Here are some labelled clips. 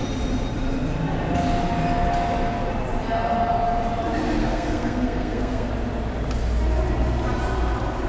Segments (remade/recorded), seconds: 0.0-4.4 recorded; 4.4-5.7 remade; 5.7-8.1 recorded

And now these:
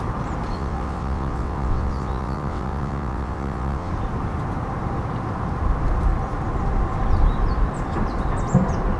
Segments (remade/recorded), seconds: 0.0-0.5 recorded; 0.5-3.9 remade; 3.9-9.0 recorded

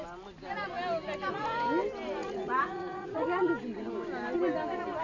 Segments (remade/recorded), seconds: 0.0-2.2 recorded; 2.2-3.5 remade; 3.5-5.0 recorded

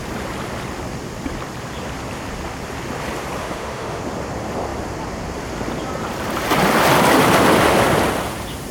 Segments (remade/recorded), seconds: 0.0-3.4 recorded; 3.4-4.0 remade; 4.0-8.7 recorded

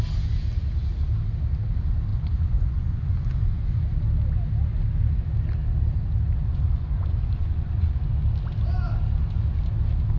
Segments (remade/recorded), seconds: 0.0-2.1 recorded; 2.1-3.8 remade; 3.8-6.5 recorded; 6.5-8.0 remade; 8.0-10.2 recorded

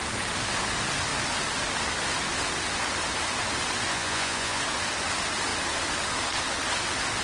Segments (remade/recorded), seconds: 0.0-3.9 recorded; 3.9-4.6 remade; 4.6-7.2 recorded

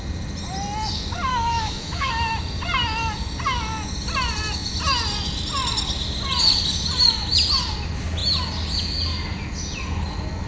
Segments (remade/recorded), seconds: 0.0-1.3 recorded; 1.3-2.1 remade; 2.1-10.5 recorded